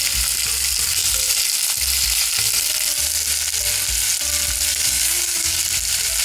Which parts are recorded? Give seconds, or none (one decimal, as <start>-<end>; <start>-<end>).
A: 0.0-4.7; 5.6-6.2